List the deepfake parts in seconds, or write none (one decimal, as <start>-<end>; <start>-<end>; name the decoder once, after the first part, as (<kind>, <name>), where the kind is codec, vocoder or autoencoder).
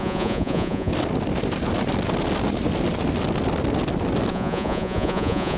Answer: 0.0-0.9 (vocoder, Vocos); 4.3-5.6